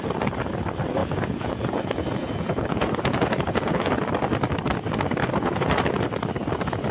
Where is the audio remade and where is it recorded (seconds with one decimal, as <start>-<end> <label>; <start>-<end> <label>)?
0.0-1.0 recorded; 1.0-3.9 remade; 3.9-5.2 recorded; 5.2-6.0 remade; 6.0-6.9 recorded